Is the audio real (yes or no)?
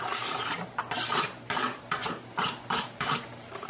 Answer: no